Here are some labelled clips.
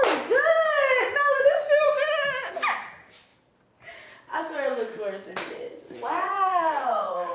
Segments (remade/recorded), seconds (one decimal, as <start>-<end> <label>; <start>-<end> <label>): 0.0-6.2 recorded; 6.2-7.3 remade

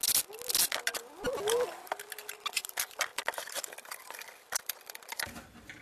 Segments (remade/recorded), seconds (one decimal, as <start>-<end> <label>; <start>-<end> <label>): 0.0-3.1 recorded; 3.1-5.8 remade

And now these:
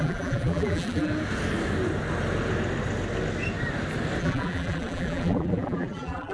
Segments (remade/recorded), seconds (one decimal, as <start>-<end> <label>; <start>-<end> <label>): 0.0-1.1 remade; 1.1-4.2 recorded; 4.2-6.3 remade

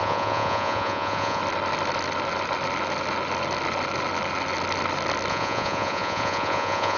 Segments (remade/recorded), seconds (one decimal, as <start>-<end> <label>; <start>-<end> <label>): 0.0-1.4 remade; 1.4-5.3 recorded; 5.3-7.0 remade